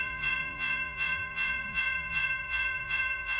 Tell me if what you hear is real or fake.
fake